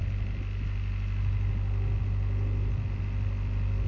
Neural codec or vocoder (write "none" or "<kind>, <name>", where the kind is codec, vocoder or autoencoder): none